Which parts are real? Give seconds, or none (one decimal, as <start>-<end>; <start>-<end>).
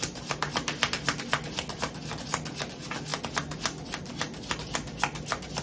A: 0.0-5.6